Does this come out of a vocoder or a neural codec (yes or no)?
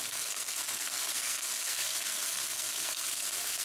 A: yes